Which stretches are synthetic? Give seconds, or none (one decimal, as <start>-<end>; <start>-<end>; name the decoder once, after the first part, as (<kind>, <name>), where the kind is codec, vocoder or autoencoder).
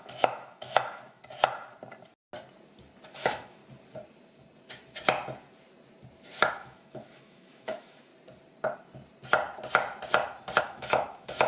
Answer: 0.0-1.2 (autoencoder, DAC-VAE); 3.1-3.6; 6.5-8.1; 10.6-11.5